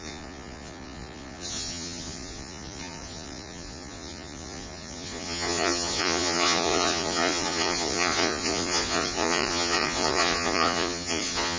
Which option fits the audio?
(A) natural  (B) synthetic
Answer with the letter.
B